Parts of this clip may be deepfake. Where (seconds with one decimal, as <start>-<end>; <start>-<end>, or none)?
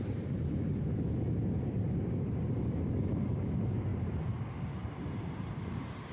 0.0-0.8; 3.1-6.1